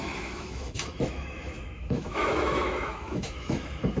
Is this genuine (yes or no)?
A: no